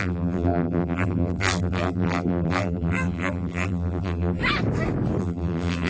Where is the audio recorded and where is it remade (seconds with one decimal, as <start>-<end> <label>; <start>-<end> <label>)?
0.0-4.4 remade; 4.4-5.2 recorded; 5.2-5.9 remade